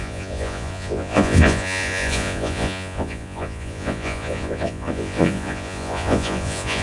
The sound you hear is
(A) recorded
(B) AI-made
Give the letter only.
B